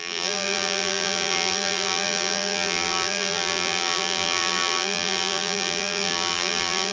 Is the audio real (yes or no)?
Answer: no